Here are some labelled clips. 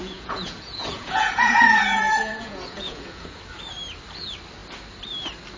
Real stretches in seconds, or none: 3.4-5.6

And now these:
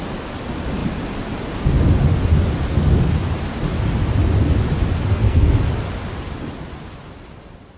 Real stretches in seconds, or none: 0.0-5.1; 5.7-7.8

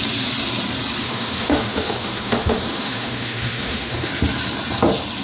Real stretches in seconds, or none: 0.0-1.0; 4.1-5.2

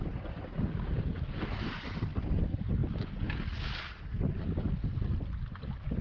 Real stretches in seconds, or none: 0.0-6.0

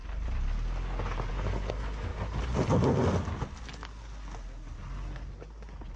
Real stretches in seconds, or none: 0.0-1.3; 2.1-6.0

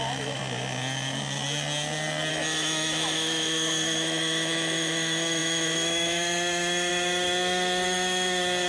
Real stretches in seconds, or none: 0.4-2.3

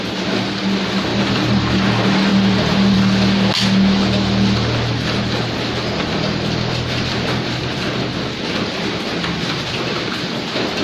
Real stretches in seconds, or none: 0.0-1.1; 1.7-2.3; 3.0-10.8